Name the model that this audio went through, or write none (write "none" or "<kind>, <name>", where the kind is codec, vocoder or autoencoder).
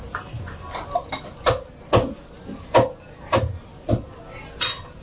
none